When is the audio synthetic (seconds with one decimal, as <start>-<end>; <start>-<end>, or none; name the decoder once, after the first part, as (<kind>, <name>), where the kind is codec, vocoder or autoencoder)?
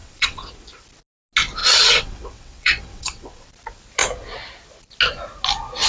0.0-0.5 (vocoder, WaveNeXt); 1.6-3.5